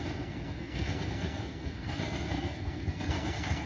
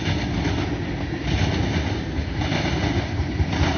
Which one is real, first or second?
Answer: second